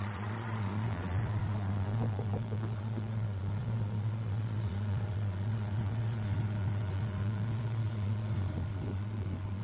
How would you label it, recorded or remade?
remade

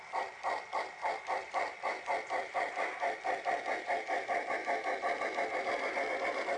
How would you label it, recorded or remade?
recorded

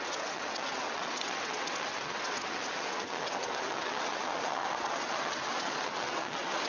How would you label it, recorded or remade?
remade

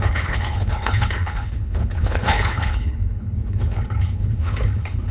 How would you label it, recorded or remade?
remade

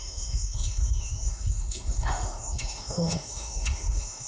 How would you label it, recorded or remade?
remade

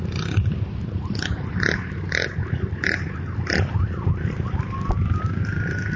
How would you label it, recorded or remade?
recorded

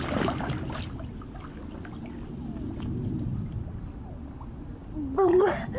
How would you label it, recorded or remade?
recorded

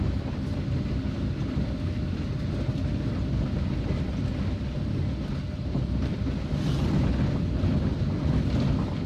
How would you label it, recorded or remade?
recorded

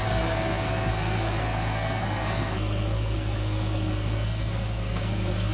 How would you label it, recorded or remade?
remade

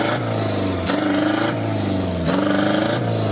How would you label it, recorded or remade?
recorded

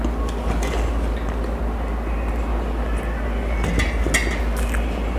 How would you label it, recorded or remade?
recorded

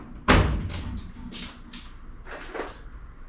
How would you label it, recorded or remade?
recorded